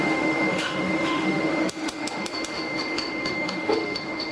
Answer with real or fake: fake